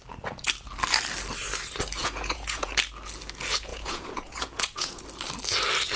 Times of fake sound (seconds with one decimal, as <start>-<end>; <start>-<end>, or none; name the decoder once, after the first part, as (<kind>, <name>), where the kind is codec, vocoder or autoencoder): 2.0-2.7 (vocoder, Vocos); 3.7-5.0